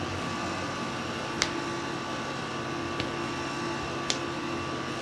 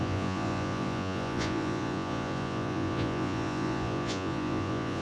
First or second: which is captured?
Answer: first